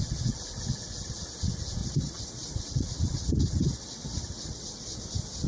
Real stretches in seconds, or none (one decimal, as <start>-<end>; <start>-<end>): 0.0-1.8; 4.7-5.5